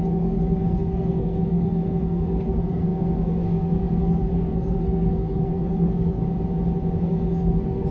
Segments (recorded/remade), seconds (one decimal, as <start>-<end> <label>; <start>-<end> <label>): 0.0-6.2 remade; 6.2-7.0 recorded; 7.0-7.9 remade